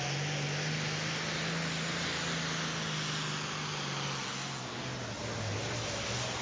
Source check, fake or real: real